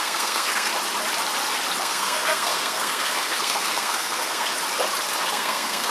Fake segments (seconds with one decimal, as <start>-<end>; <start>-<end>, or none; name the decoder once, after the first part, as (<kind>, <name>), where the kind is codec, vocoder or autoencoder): 0.0-0.7 (codec, SNAC); 1.8-4.5; 5.3-5.9